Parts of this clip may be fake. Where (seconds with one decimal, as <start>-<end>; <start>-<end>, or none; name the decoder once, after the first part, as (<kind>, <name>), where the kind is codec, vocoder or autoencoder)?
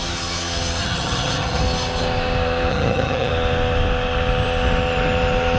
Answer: 0.8-1.6 (vocoder, HiFi-GAN); 2.7-3.3